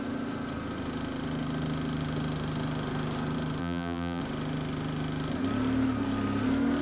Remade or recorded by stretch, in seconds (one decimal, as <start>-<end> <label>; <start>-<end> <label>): 0.0-3.6 recorded; 3.6-4.2 remade; 4.2-6.8 recorded